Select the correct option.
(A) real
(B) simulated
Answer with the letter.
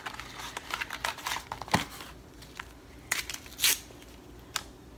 A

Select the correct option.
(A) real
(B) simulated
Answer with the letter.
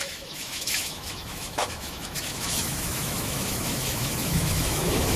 B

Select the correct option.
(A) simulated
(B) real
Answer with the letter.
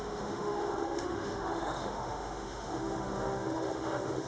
A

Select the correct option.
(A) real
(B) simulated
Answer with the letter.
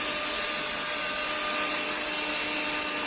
A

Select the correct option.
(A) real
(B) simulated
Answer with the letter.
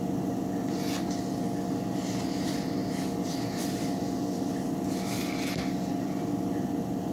A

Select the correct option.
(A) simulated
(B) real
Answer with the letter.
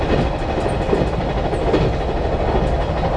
B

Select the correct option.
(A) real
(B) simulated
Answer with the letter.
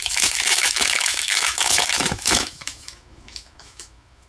B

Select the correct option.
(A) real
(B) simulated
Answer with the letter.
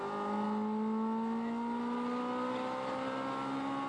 A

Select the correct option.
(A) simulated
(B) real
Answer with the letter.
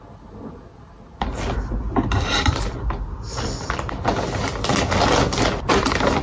B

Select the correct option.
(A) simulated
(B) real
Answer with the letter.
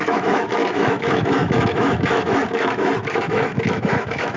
A